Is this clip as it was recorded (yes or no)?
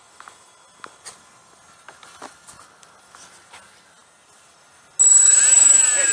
yes